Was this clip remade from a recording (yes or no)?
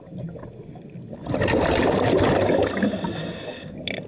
no